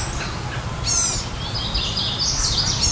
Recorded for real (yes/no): yes